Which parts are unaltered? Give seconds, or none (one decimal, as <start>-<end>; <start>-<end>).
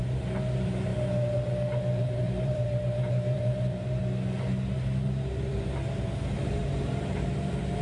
0.9-2.0; 4.0-4.7; 5.5-6.6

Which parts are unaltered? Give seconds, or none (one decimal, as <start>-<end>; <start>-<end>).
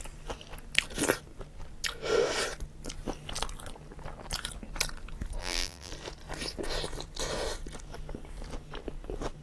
0.0-5.4; 5.9-9.4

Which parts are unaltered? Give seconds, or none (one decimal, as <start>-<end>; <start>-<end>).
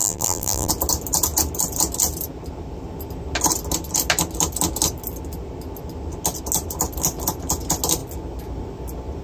0.7-9.2